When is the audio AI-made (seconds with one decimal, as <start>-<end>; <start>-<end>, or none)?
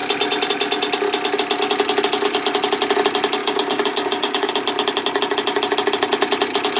3.4-4.5